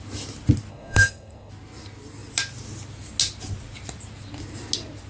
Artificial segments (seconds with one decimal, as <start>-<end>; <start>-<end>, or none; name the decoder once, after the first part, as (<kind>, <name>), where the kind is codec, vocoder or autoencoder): 0.7-1.5 (codec, SNAC)